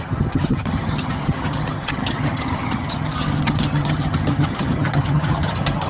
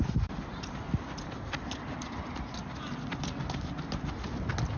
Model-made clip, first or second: first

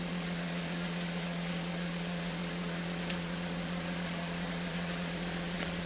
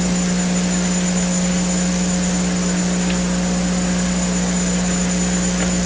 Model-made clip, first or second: first